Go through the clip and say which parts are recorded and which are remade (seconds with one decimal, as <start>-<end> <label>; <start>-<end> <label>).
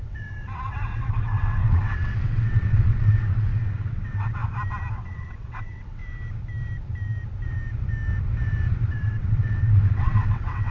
0.0-4.4 remade; 4.4-4.9 recorded; 4.9-6.0 remade; 6.0-8.9 recorded; 8.9-10.7 remade